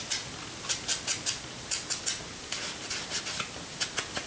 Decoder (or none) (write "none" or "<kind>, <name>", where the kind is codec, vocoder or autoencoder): none